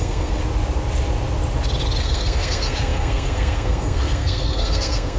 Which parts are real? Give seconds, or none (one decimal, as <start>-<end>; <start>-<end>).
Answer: 0.4-2.0